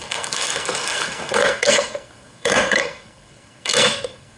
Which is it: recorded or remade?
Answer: remade